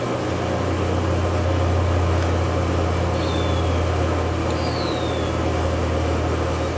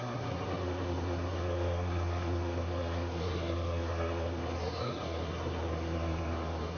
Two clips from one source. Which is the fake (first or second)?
second